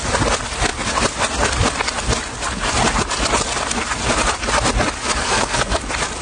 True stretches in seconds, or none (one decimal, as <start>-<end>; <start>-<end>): 0.0-5.2; 5.8-6.2

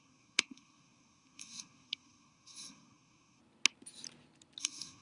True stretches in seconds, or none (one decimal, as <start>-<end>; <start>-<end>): 3.4-4.6

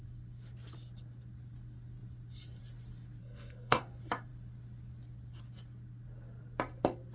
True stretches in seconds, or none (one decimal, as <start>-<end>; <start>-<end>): 0.0-3.2; 3.8-7.1

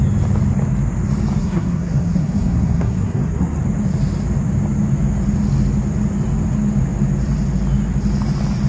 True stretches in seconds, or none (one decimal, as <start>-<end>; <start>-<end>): 0.0-1.4; 3.6-8.7

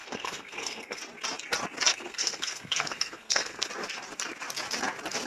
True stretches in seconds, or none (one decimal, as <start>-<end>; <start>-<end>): 1.0-1.9; 3.7-5.3

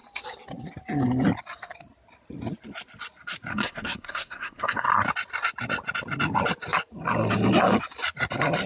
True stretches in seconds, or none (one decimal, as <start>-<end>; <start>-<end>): 0.0-3.5; 4.9-8.7